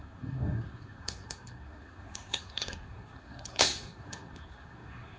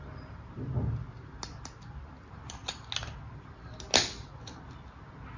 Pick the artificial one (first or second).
first